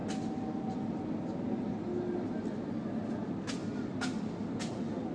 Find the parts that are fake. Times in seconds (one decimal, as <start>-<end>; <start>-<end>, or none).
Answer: none